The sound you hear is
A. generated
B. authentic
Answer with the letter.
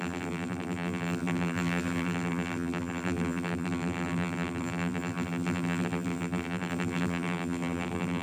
A